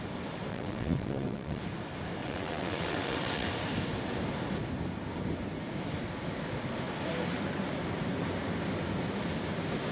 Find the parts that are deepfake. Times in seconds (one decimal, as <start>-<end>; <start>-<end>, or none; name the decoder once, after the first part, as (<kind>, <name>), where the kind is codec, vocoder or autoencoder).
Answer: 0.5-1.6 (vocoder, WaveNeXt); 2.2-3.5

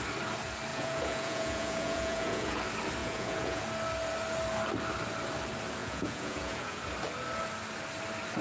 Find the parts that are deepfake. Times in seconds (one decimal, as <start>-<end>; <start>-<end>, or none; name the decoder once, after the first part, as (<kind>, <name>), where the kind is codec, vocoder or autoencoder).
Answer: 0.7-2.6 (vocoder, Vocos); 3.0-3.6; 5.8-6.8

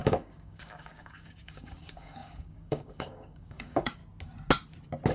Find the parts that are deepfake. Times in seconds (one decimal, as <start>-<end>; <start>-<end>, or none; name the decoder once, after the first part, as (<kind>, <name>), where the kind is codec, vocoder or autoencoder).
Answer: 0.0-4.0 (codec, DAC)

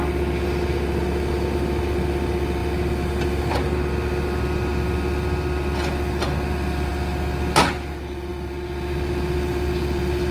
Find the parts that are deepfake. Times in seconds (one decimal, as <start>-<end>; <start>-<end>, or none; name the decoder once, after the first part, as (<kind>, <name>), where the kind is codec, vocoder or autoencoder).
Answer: none